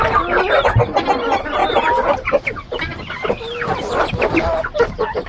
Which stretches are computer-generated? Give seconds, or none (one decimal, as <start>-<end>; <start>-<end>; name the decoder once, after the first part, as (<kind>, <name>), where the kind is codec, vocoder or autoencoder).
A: none